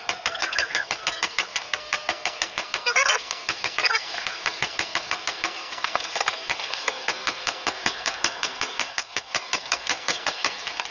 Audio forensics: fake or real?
fake